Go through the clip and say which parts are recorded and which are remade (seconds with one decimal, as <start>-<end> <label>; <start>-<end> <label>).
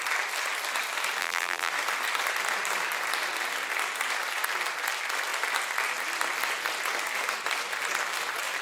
0.0-1.2 recorded; 1.2-1.7 remade; 1.7-8.6 recorded